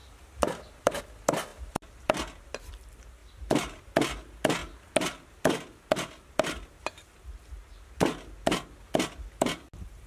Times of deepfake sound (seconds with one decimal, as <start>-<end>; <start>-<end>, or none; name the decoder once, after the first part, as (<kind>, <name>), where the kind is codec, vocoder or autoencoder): 0.0-1.0 (vocoder, BigVGAN v2); 3.2-3.8